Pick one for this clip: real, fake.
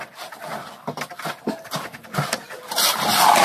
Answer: real